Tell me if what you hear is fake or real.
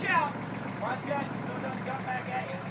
real